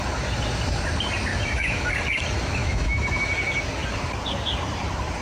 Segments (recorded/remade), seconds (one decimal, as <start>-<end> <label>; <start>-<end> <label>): 0.0-1.3 recorded; 1.3-1.9 remade; 1.9-2.6 recorded; 2.6-3.2 remade; 3.2-5.2 recorded